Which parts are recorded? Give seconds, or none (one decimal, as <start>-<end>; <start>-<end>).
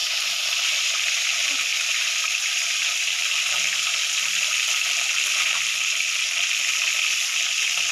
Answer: 1.2-1.7; 5.1-7.9